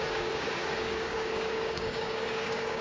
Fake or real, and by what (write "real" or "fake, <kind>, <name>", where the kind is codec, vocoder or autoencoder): fake, codec, DAC